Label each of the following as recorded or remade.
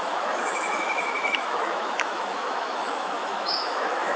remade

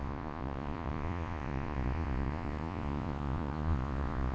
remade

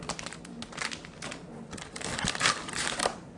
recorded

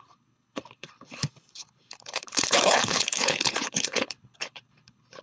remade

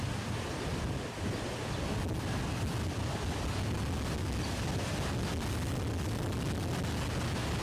recorded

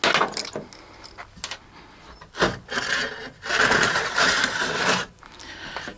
recorded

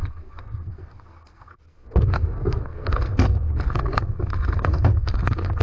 remade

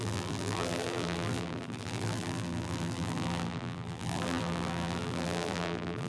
remade